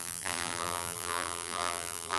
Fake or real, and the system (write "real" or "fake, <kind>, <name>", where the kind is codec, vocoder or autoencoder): fake, vocoder, BigVGAN v2